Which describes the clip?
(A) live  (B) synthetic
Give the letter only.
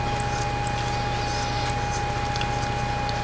A